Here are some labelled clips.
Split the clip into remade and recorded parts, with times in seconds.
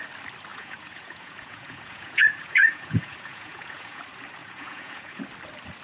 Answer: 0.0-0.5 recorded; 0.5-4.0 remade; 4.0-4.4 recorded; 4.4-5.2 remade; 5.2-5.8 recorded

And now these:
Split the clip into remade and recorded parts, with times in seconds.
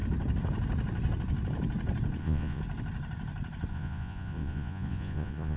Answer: 0.0-2.2 recorded; 2.2-2.6 remade; 2.6-3.7 recorded; 3.7-5.6 remade